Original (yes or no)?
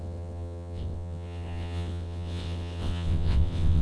no